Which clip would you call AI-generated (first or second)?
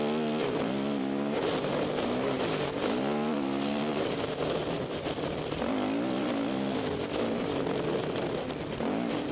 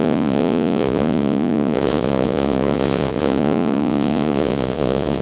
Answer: second